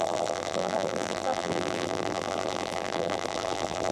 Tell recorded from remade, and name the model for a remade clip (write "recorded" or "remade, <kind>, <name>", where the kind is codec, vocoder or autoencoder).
remade, vocoder, BigVGAN v2